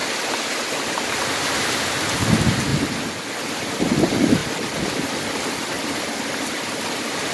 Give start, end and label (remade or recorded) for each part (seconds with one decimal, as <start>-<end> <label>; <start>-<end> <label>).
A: 0.0-7.3 recorded